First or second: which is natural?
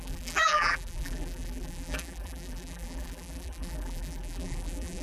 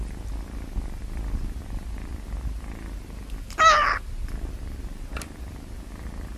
second